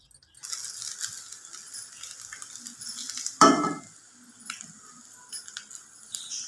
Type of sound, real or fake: real